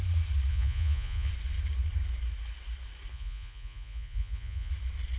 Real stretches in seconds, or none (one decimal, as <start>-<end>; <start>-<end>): 0.0-0.5; 1.3-3.1; 4.7-5.2